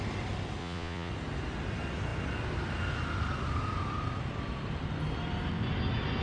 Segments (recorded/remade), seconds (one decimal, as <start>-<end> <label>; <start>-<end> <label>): 0.0-0.6 recorded; 0.6-1.1 remade; 1.1-6.2 recorded

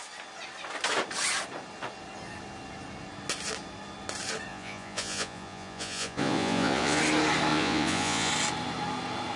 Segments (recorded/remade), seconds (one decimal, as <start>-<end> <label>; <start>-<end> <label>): 0.0-4.5 recorded; 4.5-7.0 remade; 7.0-7.5 recorded; 7.5-8.3 remade; 8.3-9.4 recorded

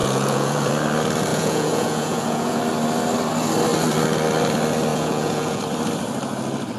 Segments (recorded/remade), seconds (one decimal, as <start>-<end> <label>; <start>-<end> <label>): 0.0-0.7 remade; 0.7-1.3 recorded; 1.3-2.6 remade; 2.6-4.9 recorded; 4.9-5.6 remade; 5.6-6.8 recorded

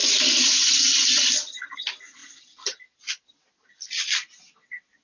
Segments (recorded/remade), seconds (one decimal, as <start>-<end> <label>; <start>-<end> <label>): 0.0-5.0 recorded